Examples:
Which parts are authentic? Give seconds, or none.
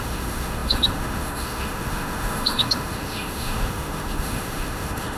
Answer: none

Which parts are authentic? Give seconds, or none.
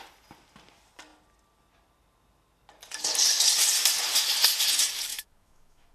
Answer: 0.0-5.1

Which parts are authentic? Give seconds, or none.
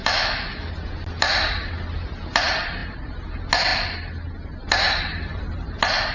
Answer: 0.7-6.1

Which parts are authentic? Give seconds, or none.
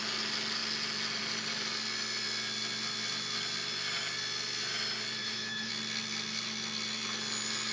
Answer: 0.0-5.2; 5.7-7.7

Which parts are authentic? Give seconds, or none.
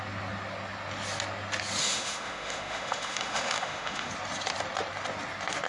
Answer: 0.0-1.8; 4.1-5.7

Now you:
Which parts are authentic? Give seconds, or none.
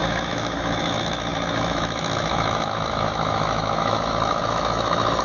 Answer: none